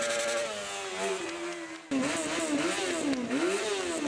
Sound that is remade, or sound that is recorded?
recorded